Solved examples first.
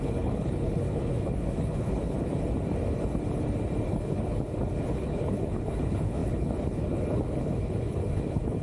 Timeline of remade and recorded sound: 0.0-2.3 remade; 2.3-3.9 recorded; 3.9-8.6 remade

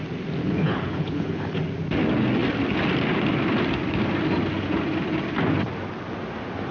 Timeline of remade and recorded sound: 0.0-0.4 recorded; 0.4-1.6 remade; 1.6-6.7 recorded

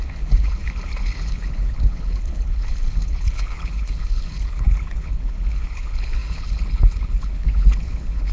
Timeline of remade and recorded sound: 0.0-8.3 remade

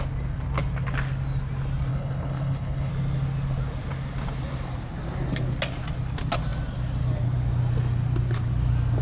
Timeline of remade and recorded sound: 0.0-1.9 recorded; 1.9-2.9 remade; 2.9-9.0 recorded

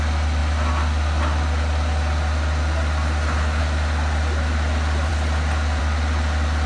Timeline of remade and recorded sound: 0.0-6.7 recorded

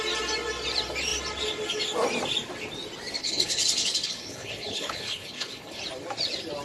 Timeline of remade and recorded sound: 0.0-3.2 recorded; 3.2-5.8 remade; 5.8-6.6 recorded

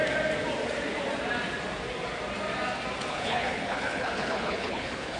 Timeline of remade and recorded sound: 0.0-3.1 recorded; 3.1-5.2 remade